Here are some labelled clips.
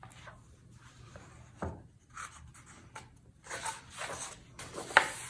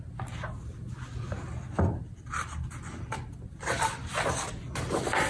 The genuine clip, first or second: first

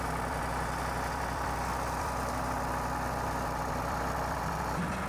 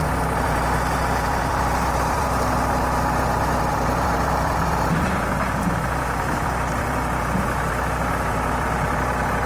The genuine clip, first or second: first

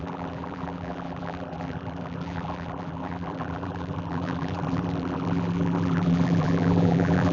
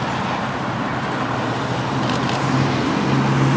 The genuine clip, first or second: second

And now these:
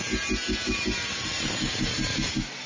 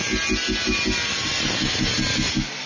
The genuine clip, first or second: second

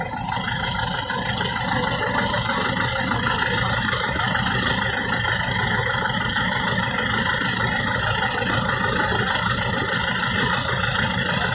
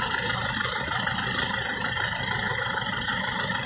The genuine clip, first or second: first